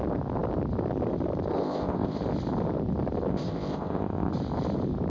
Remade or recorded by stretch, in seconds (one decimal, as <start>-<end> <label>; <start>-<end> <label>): 0.0-1.6 recorded; 1.6-2.2 remade; 2.2-3.3 recorded; 3.3-4.3 remade; 4.3-5.1 recorded